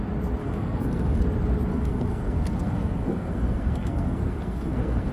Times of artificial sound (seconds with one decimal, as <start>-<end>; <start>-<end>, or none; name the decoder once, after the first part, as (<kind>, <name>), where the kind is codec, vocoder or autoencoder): 0.4-1.2 (codec, SNAC); 1.7-5.1